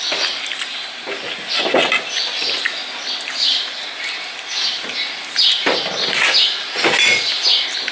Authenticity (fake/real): real